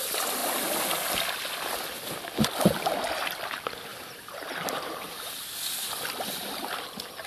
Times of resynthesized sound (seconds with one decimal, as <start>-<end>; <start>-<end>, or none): 3.9-5.6